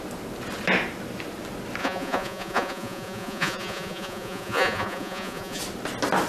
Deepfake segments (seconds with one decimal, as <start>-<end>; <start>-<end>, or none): 1.8-5.6